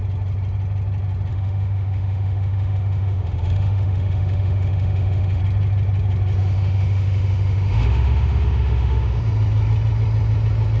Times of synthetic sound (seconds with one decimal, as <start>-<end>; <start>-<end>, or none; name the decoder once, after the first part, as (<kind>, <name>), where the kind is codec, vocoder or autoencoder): 1.3-5.4 (autoencoder, DAC-VAE); 6.4-9.2